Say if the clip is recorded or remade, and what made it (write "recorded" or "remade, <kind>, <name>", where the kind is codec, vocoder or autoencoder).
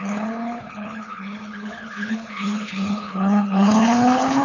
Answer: remade, codec, HILCodec